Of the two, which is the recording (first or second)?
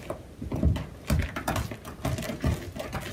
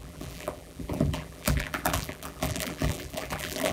first